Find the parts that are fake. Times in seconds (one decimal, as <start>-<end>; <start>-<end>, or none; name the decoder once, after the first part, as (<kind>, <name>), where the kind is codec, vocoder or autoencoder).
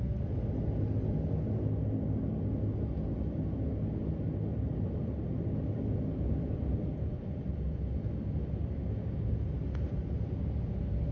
4.5-9.2 (vocoder, BigVGAN v2)